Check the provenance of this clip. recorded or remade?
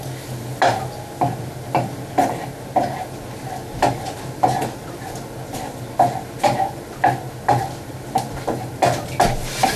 recorded